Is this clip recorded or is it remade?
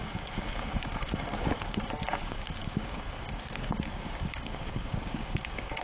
remade